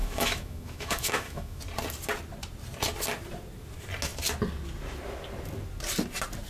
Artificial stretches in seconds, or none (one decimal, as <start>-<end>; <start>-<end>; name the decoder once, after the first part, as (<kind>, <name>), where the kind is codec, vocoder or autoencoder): 0.0-1.6 (autoencoder, DAC-VAE)